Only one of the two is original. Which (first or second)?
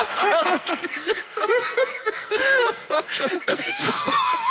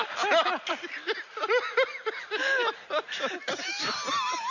second